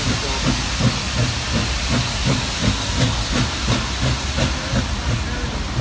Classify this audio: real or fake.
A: real